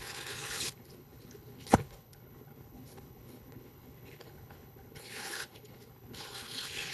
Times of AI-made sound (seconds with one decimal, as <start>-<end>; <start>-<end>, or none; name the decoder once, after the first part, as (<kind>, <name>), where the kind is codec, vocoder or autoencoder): 0.0-6.9 (codec, HILCodec)